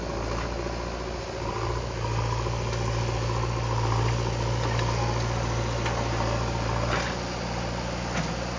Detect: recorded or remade recorded